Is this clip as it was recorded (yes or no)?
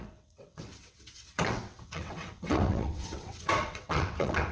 no